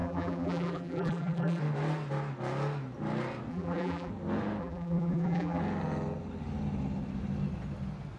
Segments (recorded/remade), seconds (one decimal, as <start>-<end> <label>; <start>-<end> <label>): 0.0-1.6 remade; 1.6-3.5 recorded; 3.5-4.1 remade; 4.1-4.6 recorded; 4.6-5.6 remade; 5.6-8.2 recorded

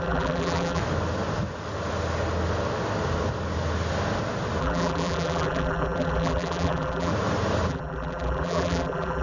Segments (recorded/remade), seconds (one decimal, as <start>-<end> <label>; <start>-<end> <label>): 0.0-0.8 remade; 0.8-4.6 recorded; 4.6-7.1 remade; 7.1-7.7 recorded; 7.7-9.2 remade

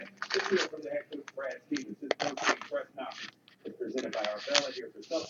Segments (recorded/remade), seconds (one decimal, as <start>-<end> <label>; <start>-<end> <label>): 0.0-5.3 recorded

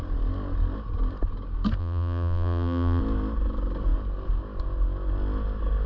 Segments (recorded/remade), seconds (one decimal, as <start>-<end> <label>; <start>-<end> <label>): 0.0-1.8 recorded; 1.8-3.0 remade; 3.0-5.9 recorded

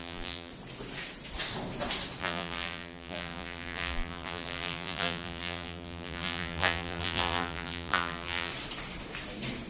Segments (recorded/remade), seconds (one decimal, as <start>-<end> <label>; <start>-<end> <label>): 0.0-0.5 remade; 0.5-2.2 recorded; 2.2-8.5 remade; 8.5-9.7 recorded

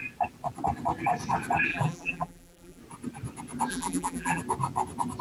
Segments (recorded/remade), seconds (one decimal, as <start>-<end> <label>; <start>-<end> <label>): 0.0-1.7 recorded; 1.7-2.8 remade; 2.8-3.7 recorded; 3.7-4.4 remade; 4.4-5.2 recorded

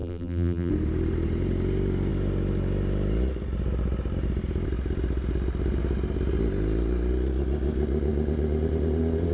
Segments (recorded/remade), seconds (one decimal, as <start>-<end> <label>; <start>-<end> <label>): 0.0-0.7 remade; 0.7-9.3 recorded

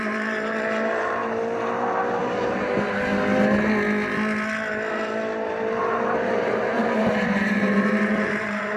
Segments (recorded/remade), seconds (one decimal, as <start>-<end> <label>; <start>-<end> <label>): 0.0-1.2 remade; 1.2-2.2 recorded; 2.2-3.1 remade; 3.1-5.8 recorded; 5.8-8.8 remade